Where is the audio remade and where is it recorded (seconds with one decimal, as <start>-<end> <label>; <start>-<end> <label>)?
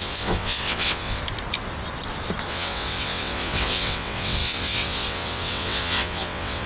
0.0-1.2 remade; 1.2-2.5 recorded; 2.5-6.7 remade